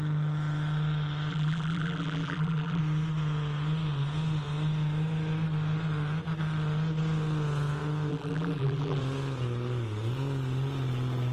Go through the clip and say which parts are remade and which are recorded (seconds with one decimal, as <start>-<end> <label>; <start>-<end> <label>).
0.0-1.3 recorded; 1.3-2.8 remade; 2.8-8.1 recorded; 8.1-9.0 remade; 9.0-11.3 recorded